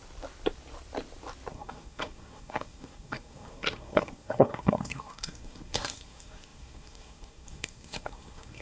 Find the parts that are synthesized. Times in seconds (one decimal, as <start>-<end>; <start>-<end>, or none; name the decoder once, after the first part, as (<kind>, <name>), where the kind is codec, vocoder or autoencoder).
1.5-8.6 (codec, SNAC)